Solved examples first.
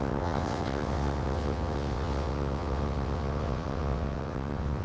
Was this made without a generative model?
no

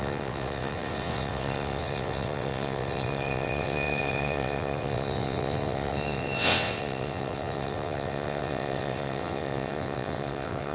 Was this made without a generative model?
no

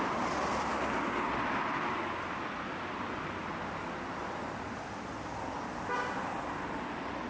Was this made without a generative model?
yes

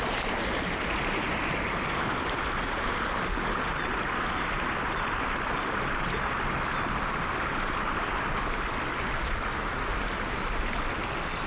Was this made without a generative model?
yes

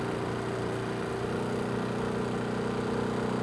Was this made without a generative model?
yes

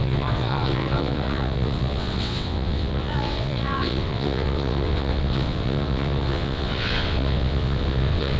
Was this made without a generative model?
no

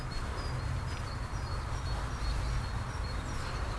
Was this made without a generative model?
yes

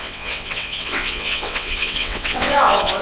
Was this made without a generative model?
no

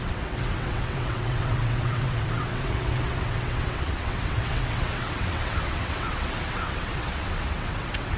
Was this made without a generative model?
no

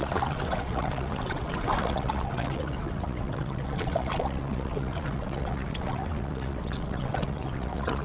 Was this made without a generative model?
no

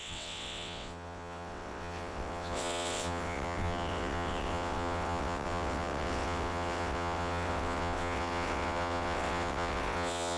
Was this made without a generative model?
no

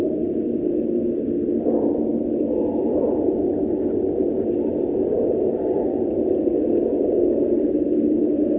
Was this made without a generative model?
yes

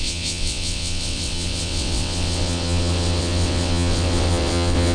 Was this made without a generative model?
no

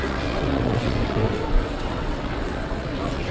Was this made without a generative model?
no